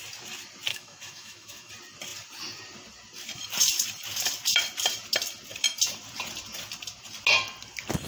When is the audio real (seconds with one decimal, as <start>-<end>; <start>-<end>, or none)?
0.0-0.7; 1.7-8.1